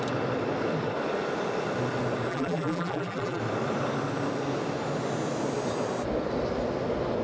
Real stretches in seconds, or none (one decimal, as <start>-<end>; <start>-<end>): 0.0-2.3; 3.4-7.2